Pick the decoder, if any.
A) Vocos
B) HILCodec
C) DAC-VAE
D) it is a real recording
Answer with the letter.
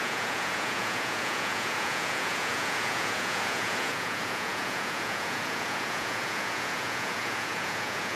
A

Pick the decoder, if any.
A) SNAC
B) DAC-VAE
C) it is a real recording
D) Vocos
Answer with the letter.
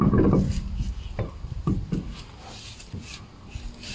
C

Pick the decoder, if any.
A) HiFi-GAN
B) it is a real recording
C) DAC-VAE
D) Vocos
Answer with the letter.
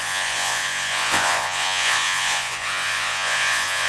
D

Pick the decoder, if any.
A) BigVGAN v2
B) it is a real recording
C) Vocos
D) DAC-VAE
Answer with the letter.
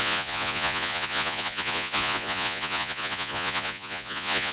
C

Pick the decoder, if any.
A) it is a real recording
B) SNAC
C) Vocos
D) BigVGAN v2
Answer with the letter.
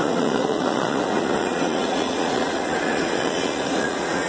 C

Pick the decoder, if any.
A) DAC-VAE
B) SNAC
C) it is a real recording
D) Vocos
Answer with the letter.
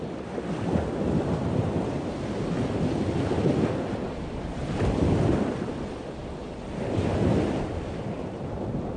C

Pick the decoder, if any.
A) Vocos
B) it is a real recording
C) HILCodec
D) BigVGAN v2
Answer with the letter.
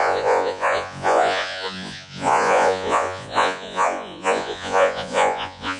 A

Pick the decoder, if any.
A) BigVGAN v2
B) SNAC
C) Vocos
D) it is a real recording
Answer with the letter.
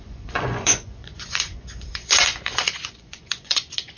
C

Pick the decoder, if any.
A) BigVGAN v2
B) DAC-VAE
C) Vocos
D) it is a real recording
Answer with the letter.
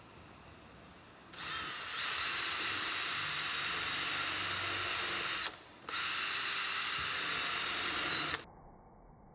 D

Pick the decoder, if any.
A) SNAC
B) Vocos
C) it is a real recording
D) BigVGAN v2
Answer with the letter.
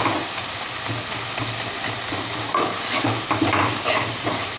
C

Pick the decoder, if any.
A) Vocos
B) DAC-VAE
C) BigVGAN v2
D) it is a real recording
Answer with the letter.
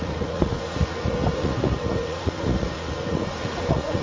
A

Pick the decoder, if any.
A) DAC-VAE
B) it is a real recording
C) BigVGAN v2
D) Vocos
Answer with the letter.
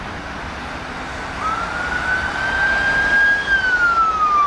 B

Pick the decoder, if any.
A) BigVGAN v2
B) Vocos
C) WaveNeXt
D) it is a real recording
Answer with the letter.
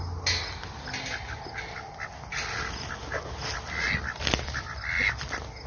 D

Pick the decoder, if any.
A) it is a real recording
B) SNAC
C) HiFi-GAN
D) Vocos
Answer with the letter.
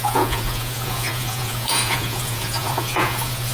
D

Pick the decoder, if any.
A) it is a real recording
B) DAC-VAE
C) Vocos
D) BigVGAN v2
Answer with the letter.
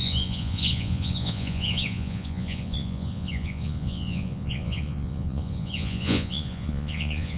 C